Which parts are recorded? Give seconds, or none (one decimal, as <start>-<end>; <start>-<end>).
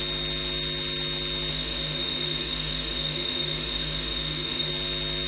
0.0-1.5; 4.7-5.3